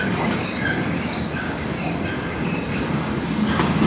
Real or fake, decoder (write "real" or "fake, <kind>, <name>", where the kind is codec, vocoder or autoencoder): fake, codec, DAC